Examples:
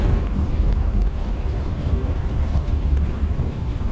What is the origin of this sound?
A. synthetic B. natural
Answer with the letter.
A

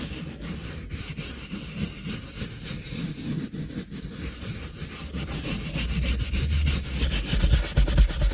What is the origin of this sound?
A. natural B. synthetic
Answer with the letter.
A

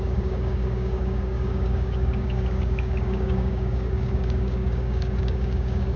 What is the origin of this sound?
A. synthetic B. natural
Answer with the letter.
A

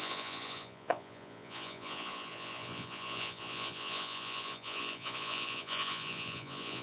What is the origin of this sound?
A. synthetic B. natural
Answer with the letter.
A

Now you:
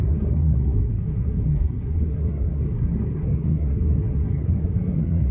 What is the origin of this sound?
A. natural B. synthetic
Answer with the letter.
B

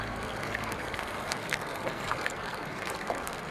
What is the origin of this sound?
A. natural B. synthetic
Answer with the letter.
B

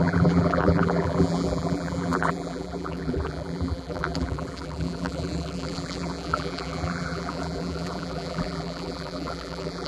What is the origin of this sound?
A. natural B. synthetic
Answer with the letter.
B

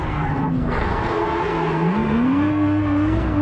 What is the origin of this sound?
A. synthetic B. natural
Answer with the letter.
A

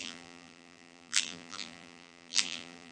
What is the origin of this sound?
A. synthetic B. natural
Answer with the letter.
A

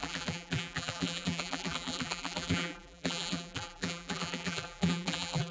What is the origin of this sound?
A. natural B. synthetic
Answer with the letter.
B